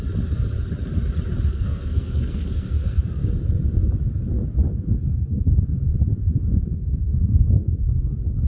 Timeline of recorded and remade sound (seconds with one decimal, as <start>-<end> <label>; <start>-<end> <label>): 0.0-1.5 recorded; 1.5-3.3 remade; 3.3-4.7 recorded; 4.7-5.5 remade; 5.5-6.2 recorded; 6.2-7.6 remade; 7.6-8.5 recorded

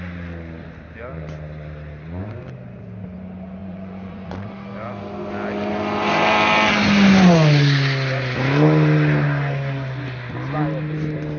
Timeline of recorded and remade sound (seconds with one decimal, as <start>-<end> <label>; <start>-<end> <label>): 0.0-3.6 recorded; 3.6-4.5 remade; 4.5-11.4 recorded

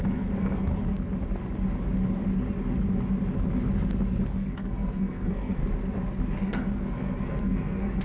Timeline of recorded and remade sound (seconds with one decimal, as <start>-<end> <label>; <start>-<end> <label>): 0.0-0.7 remade; 0.7-4.2 recorded; 4.2-5.6 remade; 5.6-6.4 recorded; 6.4-8.0 remade

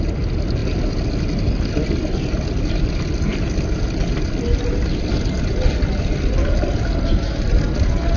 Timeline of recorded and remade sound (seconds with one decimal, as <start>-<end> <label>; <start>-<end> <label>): 0.0-8.2 recorded

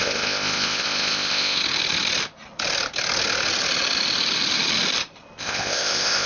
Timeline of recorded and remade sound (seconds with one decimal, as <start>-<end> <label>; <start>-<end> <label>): 0.0-1.6 remade; 1.6-5.4 recorded; 5.4-6.3 remade

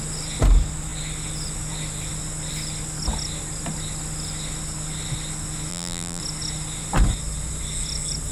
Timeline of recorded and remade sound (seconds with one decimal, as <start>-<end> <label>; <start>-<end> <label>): 0.0-5.7 recorded; 5.7-6.2 remade; 6.2-8.3 recorded

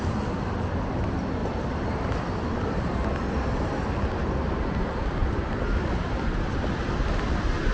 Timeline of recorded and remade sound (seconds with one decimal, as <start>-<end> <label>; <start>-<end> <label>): 0.0-1.4 recorded; 1.4-3.9 remade; 3.9-5.2 recorded; 5.2-6.9 remade; 6.9-7.7 recorded